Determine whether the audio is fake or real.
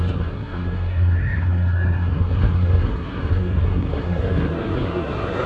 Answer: fake